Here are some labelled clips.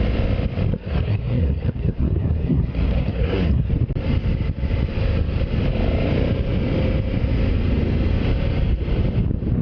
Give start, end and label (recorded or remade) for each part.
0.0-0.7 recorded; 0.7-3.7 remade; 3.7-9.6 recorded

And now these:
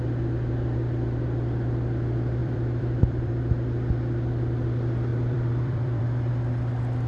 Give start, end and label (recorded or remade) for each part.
0.0-2.4 recorded; 2.4-3.3 remade; 3.3-5.1 recorded; 5.1-6.3 remade; 6.3-7.1 recorded

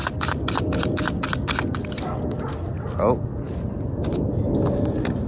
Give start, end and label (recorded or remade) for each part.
0.0-3.2 recorded; 3.2-5.3 remade